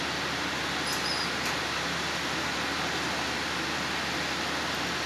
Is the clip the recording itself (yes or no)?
yes